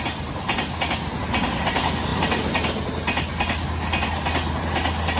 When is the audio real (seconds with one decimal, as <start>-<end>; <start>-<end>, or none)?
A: 0.0-5.2